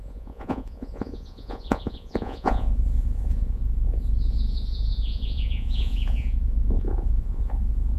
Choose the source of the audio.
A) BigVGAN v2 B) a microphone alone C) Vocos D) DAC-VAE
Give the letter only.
C